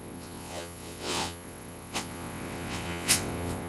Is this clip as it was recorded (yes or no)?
no